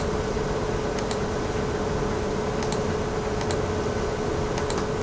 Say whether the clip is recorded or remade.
recorded